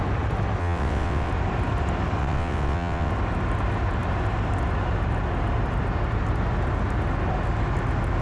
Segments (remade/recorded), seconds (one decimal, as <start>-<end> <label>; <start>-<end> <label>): 0.0-0.6 recorded; 0.6-1.3 remade; 1.3-2.2 recorded; 2.2-3.1 remade; 3.1-8.2 recorded